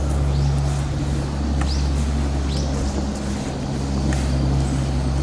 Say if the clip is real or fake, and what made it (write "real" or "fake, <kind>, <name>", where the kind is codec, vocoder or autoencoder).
real